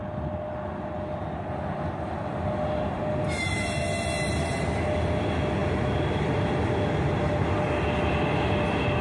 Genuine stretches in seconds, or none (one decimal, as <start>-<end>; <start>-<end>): 0.0-9.0